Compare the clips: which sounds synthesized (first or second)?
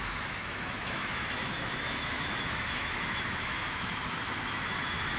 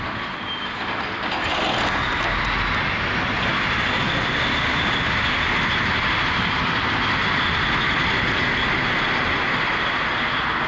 first